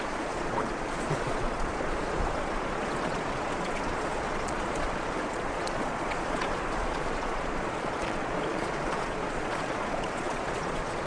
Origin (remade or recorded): remade